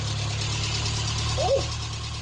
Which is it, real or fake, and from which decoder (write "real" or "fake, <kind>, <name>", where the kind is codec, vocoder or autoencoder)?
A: real